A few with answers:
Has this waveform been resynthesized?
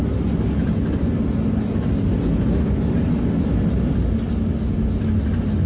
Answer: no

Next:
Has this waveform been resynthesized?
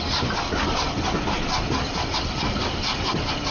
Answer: no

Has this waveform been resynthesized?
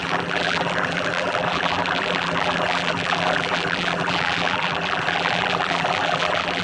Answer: yes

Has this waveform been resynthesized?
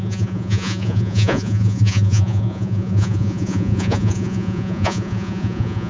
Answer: yes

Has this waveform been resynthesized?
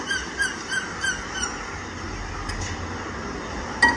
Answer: no